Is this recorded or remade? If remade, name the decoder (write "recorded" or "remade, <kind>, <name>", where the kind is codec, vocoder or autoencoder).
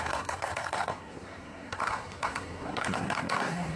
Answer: remade, codec, SNAC